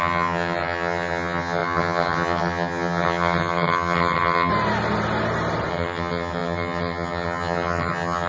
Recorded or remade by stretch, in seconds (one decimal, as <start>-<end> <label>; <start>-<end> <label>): 0.0-4.5 remade; 4.5-5.7 recorded; 5.7-8.3 remade